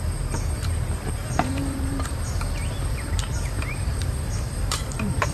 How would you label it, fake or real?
fake